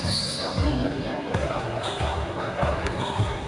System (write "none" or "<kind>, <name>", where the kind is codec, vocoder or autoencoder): codec, SNAC